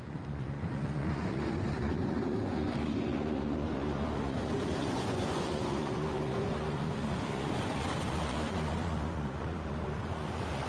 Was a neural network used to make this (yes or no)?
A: yes